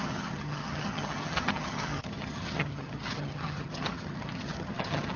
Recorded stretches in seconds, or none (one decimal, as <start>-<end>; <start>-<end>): none